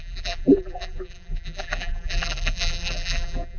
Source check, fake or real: fake